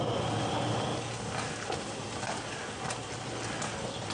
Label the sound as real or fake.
real